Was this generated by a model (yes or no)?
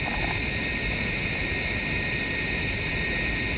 no